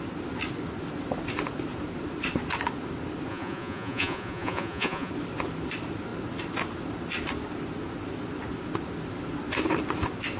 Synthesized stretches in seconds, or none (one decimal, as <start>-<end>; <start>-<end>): 3.3-5.1

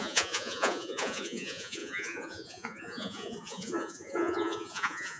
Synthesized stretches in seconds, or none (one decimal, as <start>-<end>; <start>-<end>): 0.0-5.2

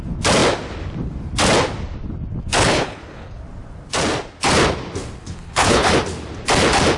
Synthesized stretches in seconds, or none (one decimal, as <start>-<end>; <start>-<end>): 2.6-3.4; 5.2-5.9

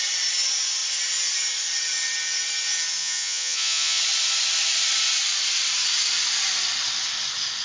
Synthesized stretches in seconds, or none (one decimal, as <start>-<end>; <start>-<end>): 3.0-4.0

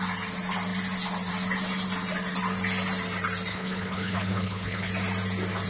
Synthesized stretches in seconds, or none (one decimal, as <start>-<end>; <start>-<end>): 3.5-4.9

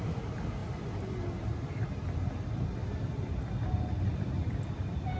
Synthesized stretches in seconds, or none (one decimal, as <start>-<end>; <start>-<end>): none